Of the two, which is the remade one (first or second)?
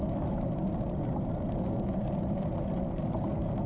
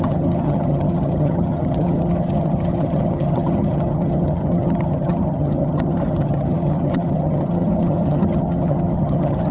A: second